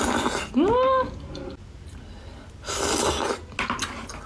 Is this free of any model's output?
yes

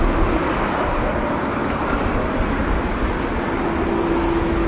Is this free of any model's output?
yes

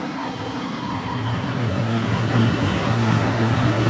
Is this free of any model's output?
no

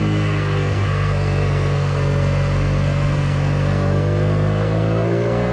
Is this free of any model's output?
no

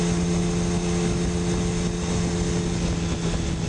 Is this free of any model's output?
yes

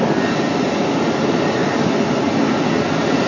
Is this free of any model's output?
yes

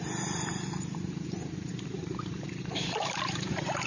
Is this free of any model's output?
no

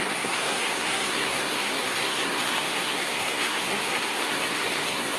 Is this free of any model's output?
no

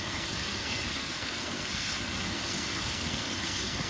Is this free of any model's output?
no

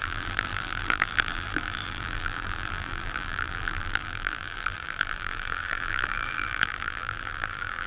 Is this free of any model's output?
no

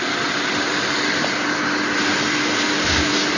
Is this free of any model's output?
yes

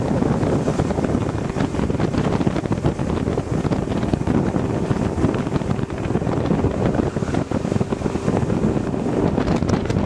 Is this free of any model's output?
yes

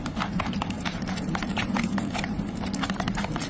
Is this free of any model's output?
no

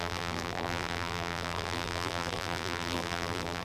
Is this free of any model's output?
no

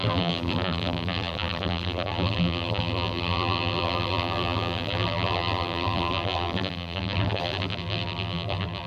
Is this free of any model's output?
no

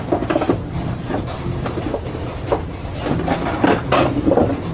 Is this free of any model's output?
yes